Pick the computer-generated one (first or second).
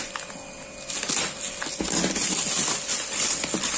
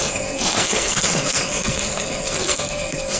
second